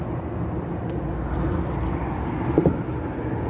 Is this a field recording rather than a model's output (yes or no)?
yes